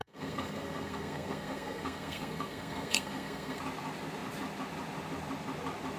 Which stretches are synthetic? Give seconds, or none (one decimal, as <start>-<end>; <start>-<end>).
0.0-3.6